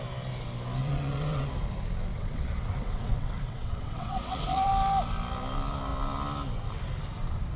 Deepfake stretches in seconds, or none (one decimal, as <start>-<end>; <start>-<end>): 0.8-1.5; 2.1-4.7